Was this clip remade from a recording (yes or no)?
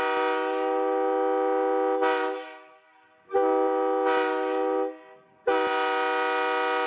no